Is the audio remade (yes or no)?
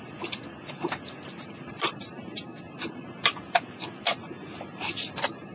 yes